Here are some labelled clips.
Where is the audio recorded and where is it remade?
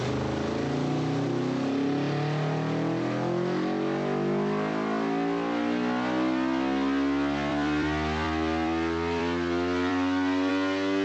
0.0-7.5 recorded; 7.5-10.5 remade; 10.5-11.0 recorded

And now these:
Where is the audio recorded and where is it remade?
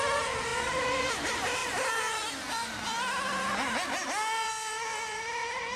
0.0-5.8 remade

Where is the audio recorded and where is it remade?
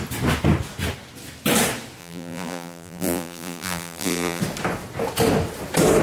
0.0-2.0 recorded; 2.0-4.4 remade; 4.4-6.0 recorded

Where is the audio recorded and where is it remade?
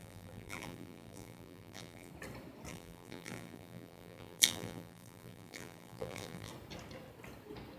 0.0-2.1 remade; 2.1-2.7 recorded; 2.7-6.5 remade; 6.5-7.8 recorded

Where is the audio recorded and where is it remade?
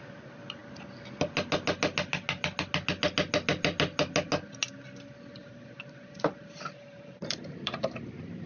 0.0-5.4 recorded; 5.4-8.0 remade; 8.0-8.5 recorded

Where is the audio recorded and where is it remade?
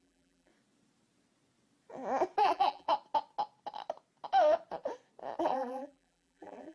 0.0-0.5 remade; 0.5-2.4 recorded; 2.4-2.9 remade; 2.9-5.4 recorded; 5.4-6.7 remade